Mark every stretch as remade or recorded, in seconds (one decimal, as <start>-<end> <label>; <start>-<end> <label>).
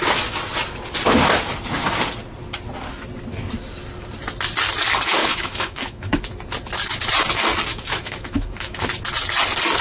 0.0-5.2 recorded; 5.2-6.2 remade; 6.2-7.7 recorded; 7.7-8.9 remade; 8.9-9.8 recorded